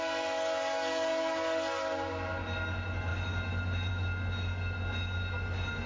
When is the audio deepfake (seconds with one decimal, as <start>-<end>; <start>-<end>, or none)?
none

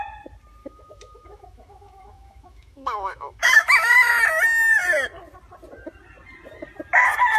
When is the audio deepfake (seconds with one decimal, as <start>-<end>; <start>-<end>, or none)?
0.6-4.1